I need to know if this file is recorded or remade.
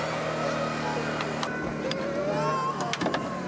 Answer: recorded